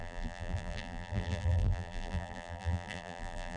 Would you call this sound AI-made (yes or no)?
yes